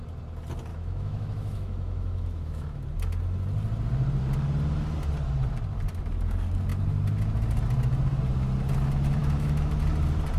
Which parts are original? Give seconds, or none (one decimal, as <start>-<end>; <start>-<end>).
0.0-0.7; 2.8-9.2; 9.8-10.4